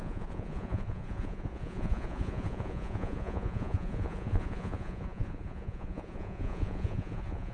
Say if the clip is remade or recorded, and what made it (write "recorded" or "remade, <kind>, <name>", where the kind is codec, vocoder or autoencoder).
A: remade, vocoder, Vocos